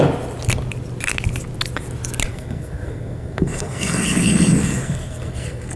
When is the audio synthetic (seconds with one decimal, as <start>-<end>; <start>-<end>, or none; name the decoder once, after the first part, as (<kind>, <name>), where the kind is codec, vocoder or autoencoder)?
2.3-5.8 (codec, SNAC)